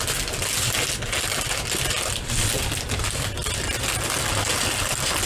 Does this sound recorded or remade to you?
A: recorded